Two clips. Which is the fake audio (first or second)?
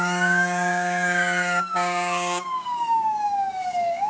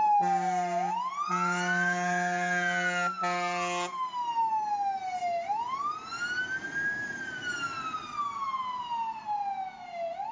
first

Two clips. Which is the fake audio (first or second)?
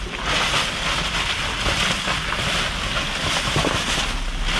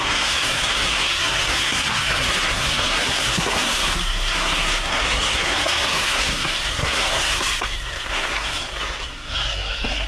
second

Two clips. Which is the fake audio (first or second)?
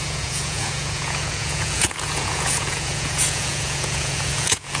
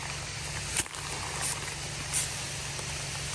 first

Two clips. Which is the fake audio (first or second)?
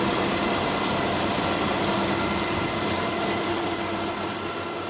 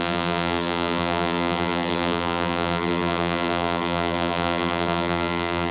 second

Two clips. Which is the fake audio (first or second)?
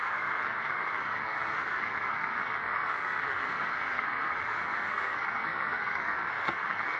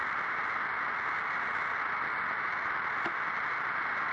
first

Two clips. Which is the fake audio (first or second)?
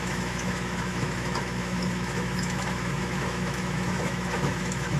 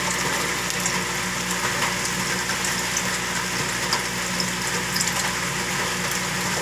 first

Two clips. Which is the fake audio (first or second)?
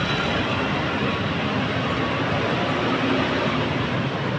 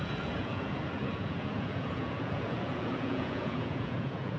second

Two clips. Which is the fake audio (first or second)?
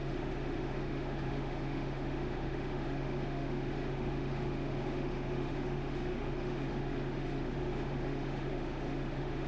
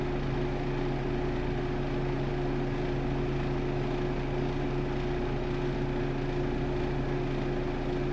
first